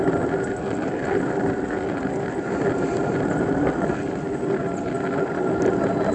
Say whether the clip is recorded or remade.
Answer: recorded